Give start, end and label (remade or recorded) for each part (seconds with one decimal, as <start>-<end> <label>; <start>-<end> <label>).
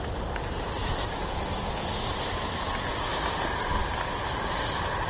0.0-0.8 recorded; 0.8-1.6 remade; 1.6-5.1 recorded